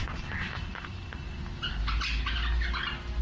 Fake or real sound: real